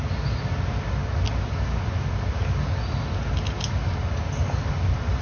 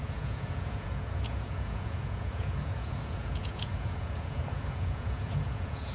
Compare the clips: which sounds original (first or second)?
first